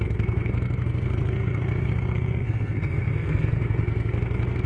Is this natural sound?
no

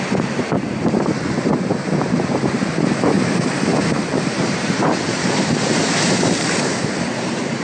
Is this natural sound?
no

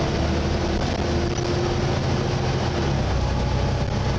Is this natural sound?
yes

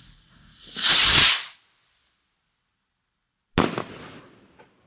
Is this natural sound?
yes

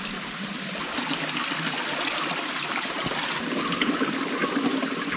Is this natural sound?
yes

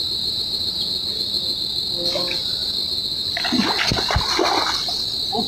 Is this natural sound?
yes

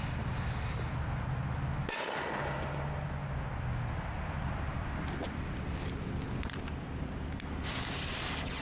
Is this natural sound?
yes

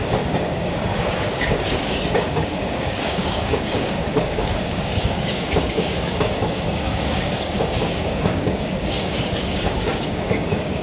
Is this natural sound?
no